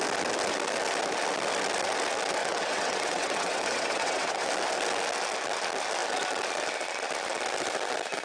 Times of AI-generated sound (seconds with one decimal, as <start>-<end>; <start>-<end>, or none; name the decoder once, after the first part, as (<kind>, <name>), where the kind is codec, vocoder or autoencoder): 2.4-4.5 (vocoder, WaveNeXt)